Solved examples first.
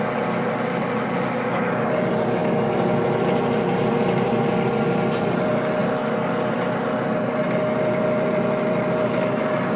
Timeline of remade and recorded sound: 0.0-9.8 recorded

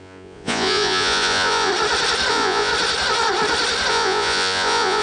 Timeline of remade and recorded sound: 0.0-1.7 remade; 1.7-2.3 recorded; 2.3-2.7 remade; 2.7-3.9 recorded; 3.9-5.0 remade

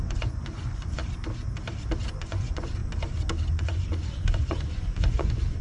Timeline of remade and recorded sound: 0.0-1.0 remade; 1.0-2.1 recorded; 2.1-2.8 remade; 2.8-3.5 recorded; 3.5-5.6 remade

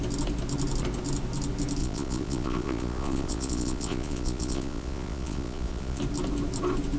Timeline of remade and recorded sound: 0.0-1.8 recorded; 1.8-6.0 remade; 6.0-7.0 recorded

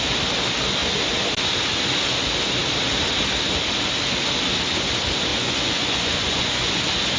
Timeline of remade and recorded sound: 0.0-5.3 recorded; 5.3-6.8 remade; 6.8-7.2 recorded

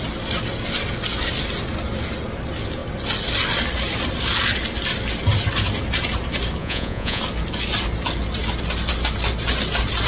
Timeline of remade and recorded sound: 0.0-6.6 recorded; 6.6-7.2 remade; 7.2-10.1 recorded

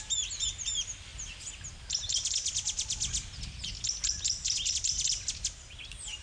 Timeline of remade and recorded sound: 0.0-6.2 recorded